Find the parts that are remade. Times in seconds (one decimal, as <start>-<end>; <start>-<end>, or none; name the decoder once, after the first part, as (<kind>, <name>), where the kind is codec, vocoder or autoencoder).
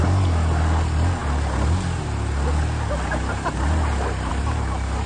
none